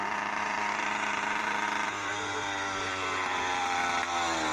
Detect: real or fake fake